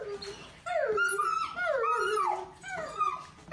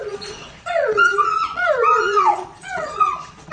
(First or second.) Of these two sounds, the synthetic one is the second